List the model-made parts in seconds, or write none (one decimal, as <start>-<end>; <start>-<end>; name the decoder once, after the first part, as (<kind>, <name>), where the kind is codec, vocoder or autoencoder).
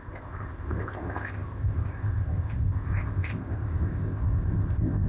0.0-5.1 (codec, ZipCodec)